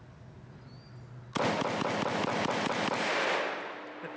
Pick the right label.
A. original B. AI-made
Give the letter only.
A